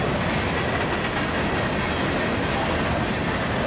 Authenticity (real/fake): real